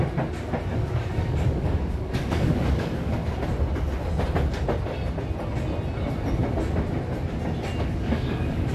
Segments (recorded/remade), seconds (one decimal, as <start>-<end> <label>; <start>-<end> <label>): 0.0-0.7 recorded; 0.7-3.2 remade; 3.2-7.8 recorded; 7.8-8.7 remade